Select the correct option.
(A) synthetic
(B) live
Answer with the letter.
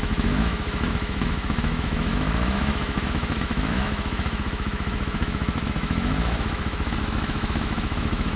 A